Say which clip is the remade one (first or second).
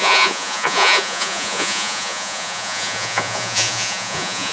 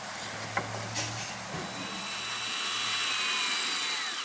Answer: first